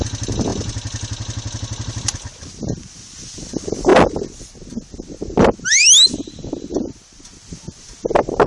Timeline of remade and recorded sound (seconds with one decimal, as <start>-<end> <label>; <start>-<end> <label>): 0.0-8.5 recorded